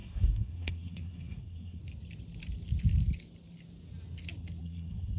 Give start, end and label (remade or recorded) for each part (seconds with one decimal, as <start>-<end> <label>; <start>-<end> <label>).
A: 0.0-1.8 remade; 1.8-4.6 recorded; 4.6-5.2 remade